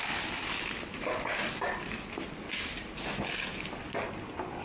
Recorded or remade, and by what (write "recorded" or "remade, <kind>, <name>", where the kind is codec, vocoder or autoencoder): recorded